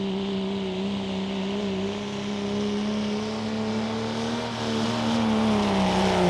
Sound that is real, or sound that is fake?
real